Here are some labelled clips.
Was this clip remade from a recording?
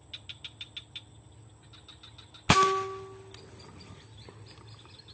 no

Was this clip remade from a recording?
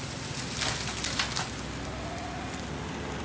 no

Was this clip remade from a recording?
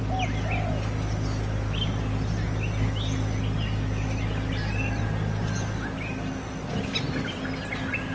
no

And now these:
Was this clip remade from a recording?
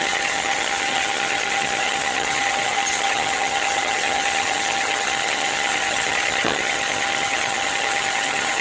yes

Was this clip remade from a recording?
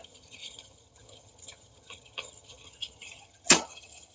yes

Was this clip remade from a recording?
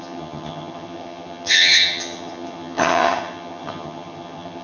yes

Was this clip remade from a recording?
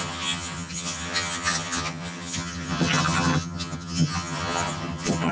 yes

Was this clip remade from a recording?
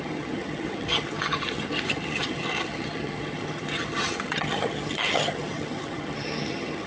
yes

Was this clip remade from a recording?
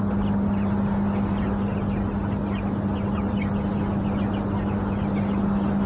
no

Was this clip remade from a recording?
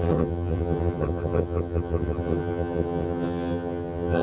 yes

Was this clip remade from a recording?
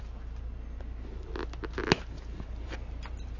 no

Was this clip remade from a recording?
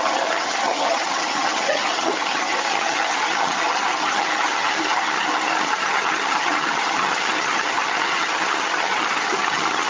yes